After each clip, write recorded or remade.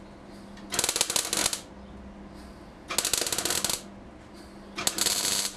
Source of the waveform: recorded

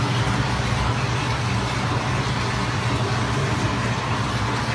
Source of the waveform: recorded